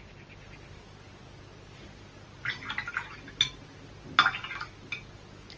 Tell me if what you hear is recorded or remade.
recorded